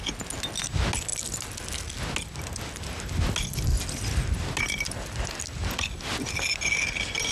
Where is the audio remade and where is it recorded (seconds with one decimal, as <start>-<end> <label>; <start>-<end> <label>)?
0.0-7.3 recorded